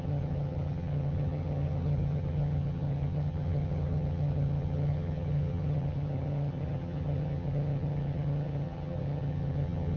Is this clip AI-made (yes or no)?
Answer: yes